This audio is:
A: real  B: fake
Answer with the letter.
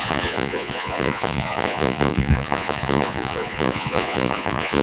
B